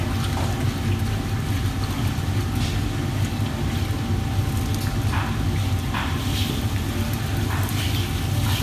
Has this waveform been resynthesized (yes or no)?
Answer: no